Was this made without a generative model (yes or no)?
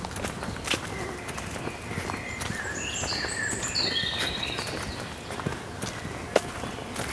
yes